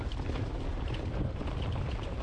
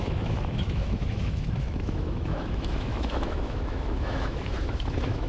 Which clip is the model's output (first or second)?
second